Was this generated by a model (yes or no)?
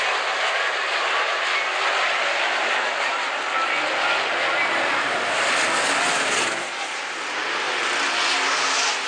no